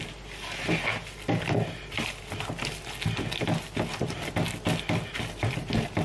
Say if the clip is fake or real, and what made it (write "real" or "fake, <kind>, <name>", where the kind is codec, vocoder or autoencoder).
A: real